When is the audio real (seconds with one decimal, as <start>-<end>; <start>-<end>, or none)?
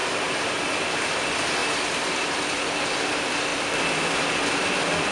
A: 0.0-3.5